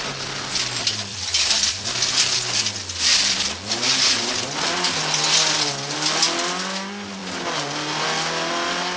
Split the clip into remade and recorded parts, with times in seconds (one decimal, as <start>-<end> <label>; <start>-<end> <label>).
0.0-1.1 recorded; 1.1-2.1 remade; 2.1-9.0 recorded